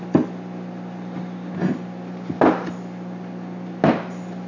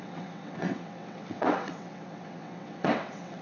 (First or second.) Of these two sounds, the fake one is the second